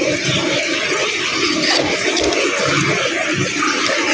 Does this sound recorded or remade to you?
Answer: recorded